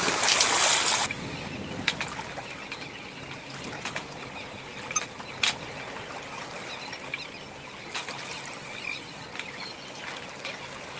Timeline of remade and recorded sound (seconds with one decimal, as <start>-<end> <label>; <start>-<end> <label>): 0.0-11.0 recorded

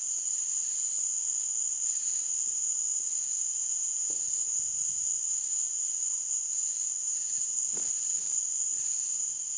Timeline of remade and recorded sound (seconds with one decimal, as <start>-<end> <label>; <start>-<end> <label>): 0.0-3.6 recorded; 3.6-4.1 remade; 4.1-7.0 recorded; 7.0-7.6 remade; 7.6-9.6 recorded

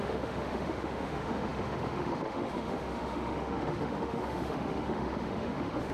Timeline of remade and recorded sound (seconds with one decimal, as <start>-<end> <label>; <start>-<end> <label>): 0.0-5.9 remade